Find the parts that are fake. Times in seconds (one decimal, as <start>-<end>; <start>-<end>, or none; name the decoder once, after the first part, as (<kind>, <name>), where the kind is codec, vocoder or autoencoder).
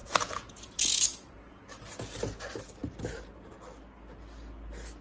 0.0-1.7 (vocoder, Vocos)